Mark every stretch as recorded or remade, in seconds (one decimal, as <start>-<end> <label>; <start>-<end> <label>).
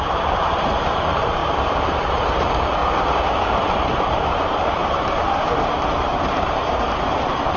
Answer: 0.0-2.8 remade; 2.8-4.1 recorded; 4.1-7.6 remade